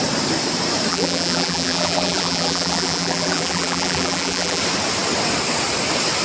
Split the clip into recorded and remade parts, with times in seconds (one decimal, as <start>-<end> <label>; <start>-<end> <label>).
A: 0.0-0.9 recorded; 0.9-4.6 remade; 4.6-6.2 recorded